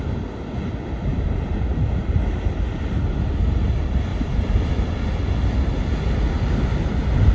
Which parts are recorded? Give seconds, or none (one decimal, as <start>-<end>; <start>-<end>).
0.0-1.1; 3.0-4.1; 4.7-7.3